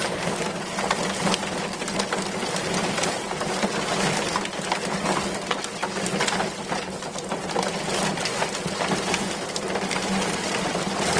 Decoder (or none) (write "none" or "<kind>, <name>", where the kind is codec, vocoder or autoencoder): none